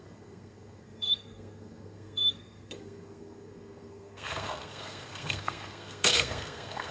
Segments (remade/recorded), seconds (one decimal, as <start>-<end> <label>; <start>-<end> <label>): 0.0-6.9 remade

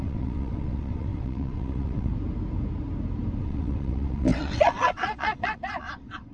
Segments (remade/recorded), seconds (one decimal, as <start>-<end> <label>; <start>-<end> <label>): 0.0-2.1 remade; 2.1-3.4 recorded; 3.4-6.3 remade

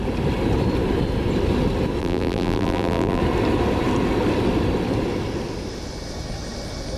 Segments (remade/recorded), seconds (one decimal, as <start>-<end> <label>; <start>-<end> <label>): 0.0-2.0 recorded; 2.0-3.2 remade; 3.2-7.0 recorded